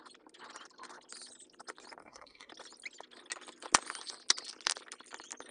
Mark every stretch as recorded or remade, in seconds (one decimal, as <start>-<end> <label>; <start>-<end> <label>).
0.0-2.0 recorded; 2.0-2.5 remade; 2.5-5.5 recorded